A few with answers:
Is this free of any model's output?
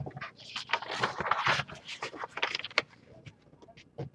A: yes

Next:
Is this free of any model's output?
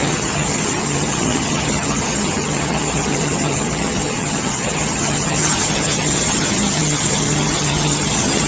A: no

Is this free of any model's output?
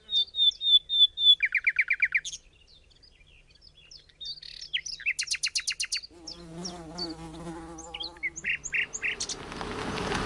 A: yes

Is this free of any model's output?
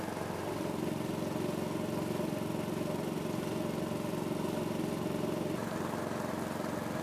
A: yes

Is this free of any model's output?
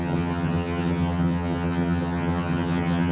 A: no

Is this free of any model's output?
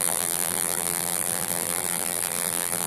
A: no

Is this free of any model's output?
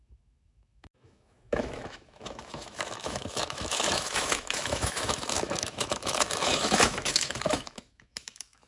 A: no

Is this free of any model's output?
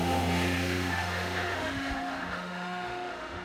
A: no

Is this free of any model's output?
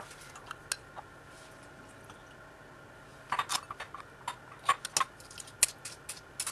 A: yes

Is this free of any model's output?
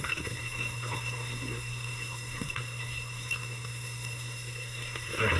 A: no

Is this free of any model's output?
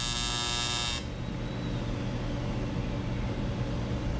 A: yes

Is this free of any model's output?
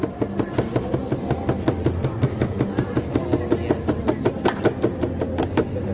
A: yes